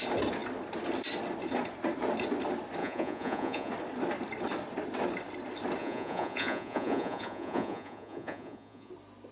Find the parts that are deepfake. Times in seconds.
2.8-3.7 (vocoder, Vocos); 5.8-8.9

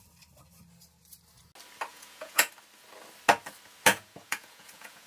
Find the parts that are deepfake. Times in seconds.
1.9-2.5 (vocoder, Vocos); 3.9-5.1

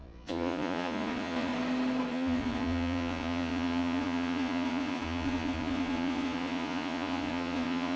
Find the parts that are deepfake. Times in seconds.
0.0-1.5 (vocoder, Vocos); 2.1-8.0

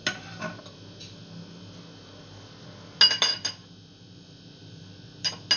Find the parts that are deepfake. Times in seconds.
none

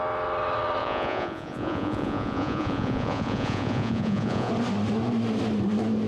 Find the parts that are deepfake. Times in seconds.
0.8-4.5 (vocoder, Vocos)

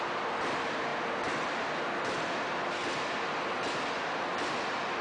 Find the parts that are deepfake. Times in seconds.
none